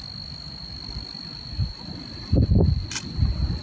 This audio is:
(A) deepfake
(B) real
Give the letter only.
B